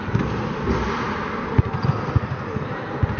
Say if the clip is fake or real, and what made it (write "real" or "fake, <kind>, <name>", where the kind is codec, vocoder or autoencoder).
real